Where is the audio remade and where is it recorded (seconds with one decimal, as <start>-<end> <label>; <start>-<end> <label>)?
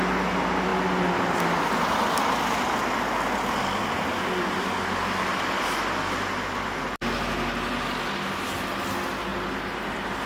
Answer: 0.0-9.3 recorded; 9.3-10.3 remade